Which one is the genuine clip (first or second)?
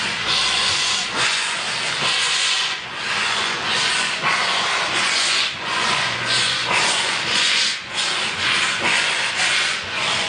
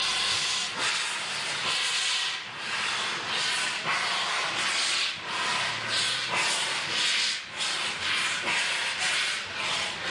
second